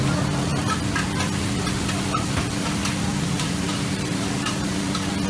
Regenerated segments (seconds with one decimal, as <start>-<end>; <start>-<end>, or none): 3.1-4.7